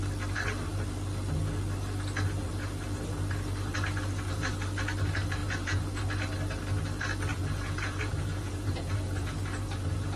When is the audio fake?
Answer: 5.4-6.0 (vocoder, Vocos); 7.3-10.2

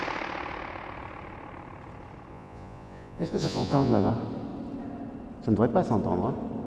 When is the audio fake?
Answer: 2.3-4.1 (vocoder, Vocos)

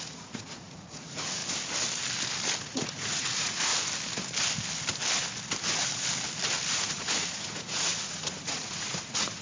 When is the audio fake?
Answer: 0.0-1.4 (vocoder, Vocos); 2.6-3.7; 6.7-9.4

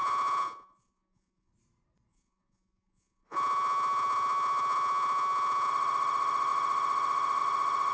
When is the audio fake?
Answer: 0.0-1.5 (vocoder, Vocos); 2.1-5.7